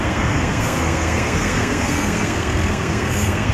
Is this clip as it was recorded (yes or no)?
no